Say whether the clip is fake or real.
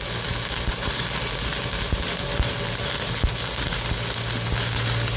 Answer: real